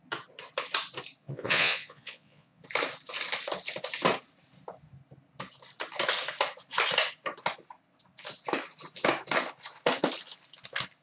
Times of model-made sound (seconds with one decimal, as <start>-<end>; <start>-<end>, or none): 1.2-2.6